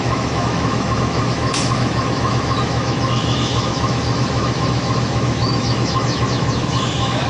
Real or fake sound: fake